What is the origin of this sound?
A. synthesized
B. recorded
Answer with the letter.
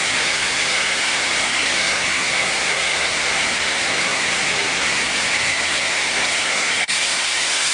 A